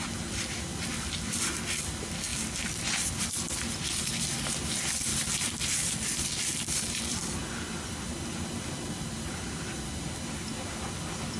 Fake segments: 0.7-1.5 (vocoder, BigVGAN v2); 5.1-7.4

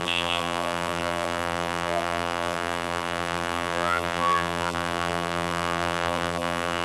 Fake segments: 0.0-6.8 (vocoder, BigVGAN v2)

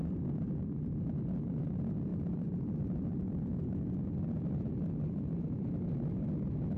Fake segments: 2.1-4.7 (vocoder, BigVGAN v2)

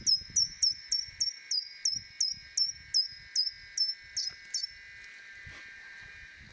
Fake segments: none

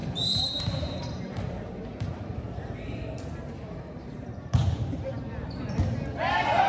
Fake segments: 0.0-4.6 (vocoder, BigVGAN v2); 6.3-6.7